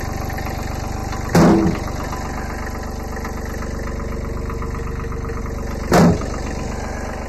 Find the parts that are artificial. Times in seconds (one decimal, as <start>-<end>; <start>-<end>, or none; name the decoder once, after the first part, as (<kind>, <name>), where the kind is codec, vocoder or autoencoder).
none

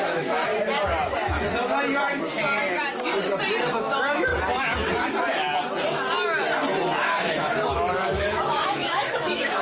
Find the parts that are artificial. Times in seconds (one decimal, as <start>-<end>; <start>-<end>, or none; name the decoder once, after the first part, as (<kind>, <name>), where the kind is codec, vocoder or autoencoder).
0.0-0.5 (autoencoder, DAC-VAE); 3.6-4.3; 7.2-9.6

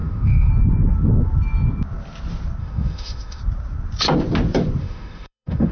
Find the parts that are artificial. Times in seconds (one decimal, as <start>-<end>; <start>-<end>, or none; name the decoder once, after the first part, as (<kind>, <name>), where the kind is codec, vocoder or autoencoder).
0.0-0.5 (autoencoder, DAC-VAE); 2.6-3.4; 4.8-5.7

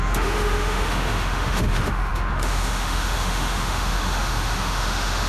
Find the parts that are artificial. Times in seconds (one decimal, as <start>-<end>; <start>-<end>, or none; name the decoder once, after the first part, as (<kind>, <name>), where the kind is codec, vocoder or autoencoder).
0.0-5.3 (autoencoder, DAC-VAE)